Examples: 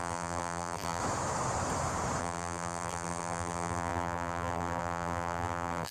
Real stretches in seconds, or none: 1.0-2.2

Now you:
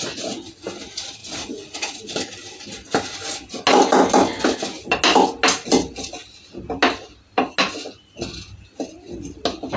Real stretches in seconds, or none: 0.0-1.2; 2.0-9.8

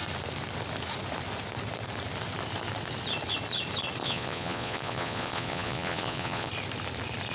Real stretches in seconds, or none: 0.0-4.0; 6.5-7.3

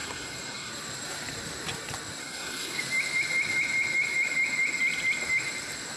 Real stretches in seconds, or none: 0.7-2.2; 2.8-6.0

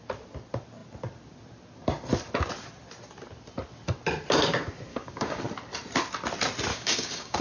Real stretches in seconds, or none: 0.0-4.9; 5.4-6.7

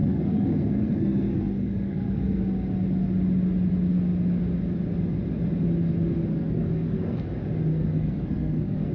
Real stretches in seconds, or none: 2.4-6.3; 7.2-7.7

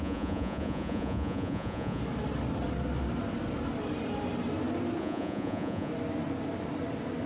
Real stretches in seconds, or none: 2.0-5.0; 5.9-7.3